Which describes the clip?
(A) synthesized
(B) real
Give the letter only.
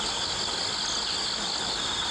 B